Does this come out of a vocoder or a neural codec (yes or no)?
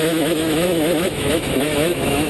yes